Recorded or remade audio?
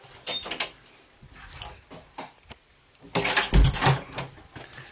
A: recorded